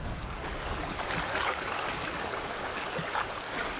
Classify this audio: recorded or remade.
remade